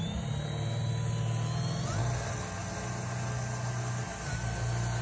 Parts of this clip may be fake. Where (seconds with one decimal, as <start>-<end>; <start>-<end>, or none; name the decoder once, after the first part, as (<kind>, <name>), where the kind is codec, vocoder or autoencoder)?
none